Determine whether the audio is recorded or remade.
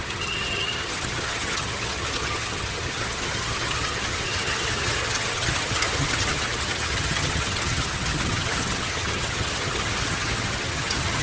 remade